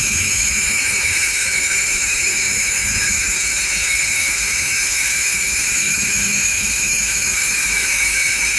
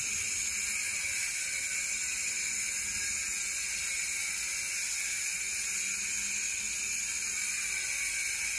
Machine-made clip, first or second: first